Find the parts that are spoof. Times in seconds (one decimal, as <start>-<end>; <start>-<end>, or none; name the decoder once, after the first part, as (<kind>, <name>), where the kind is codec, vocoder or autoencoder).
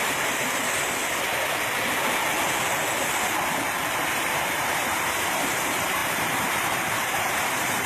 0.0-1.0 (vocoder, BigVGAN v2); 3.9-7.9